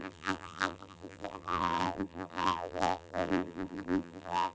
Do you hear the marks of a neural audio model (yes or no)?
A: yes